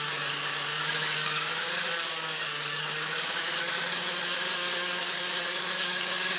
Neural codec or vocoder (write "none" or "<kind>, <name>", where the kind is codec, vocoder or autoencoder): codec, DAC